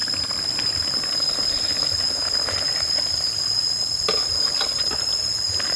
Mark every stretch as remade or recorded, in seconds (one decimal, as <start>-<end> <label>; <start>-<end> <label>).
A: 0.0-5.8 recorded